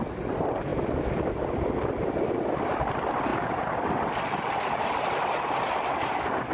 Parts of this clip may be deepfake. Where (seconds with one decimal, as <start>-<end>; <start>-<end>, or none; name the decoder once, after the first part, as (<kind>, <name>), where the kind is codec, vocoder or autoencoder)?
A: none